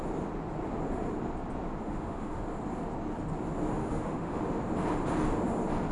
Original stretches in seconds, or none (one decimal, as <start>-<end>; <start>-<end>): 0.0-1.8; 2.4-3.8; 4.4-5.9